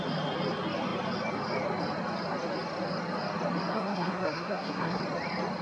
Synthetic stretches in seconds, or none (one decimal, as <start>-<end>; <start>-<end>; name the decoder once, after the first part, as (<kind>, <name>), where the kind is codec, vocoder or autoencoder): 3.7-5.0 (codec, SNAC)